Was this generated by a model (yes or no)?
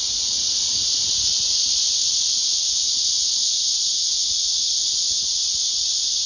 yes